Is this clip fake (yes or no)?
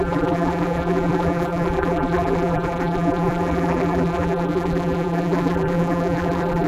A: yes